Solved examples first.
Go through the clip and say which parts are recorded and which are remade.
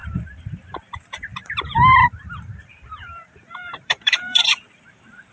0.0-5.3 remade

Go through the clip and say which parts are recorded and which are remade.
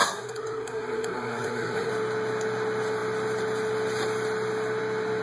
0.0-1.9 remade; 1.9-5.2 recorded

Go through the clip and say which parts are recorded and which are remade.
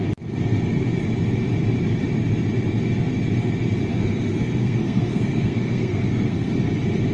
0.0-3.9 recorded; 3.9-6.5 remade; 6.5-7.1 recorded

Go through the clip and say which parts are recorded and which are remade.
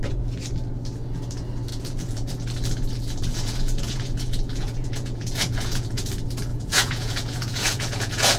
0.0-1.7 recorded; 1.7-2.3 remade; 2.3-3.3 recorded; 3.3-6.1 remade; 6.1-6.5 recorded; 6.5-8.4 remade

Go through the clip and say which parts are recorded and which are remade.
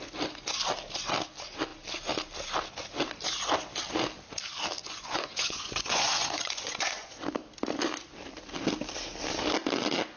0.0-4.8 recorded; 4.8-7.1 remade; 7.1-10.2 recorded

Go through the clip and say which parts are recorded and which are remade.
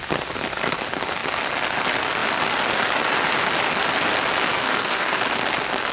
0.0-4.5 recorded; 4.5-5.2 remade; 5.2-5.9 recorded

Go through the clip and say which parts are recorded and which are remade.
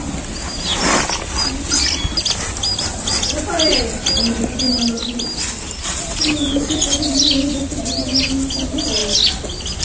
0.0-9.8 recorded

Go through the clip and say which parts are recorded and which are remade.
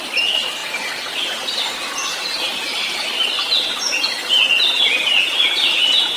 0.0-6.2 recorded